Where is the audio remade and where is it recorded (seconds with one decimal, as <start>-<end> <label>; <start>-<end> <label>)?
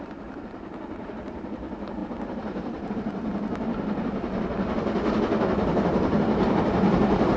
0.0-3.3 remade; 3.3-5.9 recorded; 5.9-7.4 remade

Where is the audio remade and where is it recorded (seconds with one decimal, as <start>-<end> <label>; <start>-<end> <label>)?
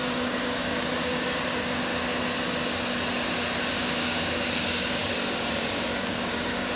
0.0-1.9 remade; 1.9-3.7 recorded; 3.7-6.8 remade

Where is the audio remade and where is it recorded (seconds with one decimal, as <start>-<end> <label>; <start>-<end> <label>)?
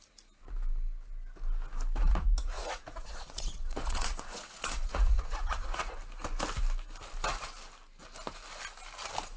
0.0-2.0 recorded; 2.0-6.0 remade; 6.0-9.4 recorded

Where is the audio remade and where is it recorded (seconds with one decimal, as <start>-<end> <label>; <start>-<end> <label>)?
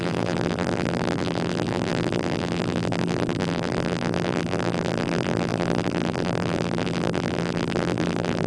0.0-8.5 remade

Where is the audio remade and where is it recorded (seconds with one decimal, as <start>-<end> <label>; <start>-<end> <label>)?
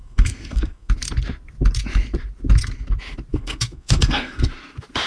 0.0-0.9 remade; 0.9-3.3 recorded; 3.3-4.5 remade; 4.5-5.1 recorded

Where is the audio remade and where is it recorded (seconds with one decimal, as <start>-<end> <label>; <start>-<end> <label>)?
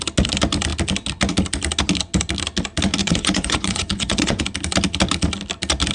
0.0-3.0 recorded; 3.0-4.4 remade; 4.4-5.9 recorded